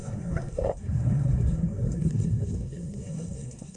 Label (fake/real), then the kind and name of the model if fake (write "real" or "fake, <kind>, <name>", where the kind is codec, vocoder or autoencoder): fake, codec, SNAC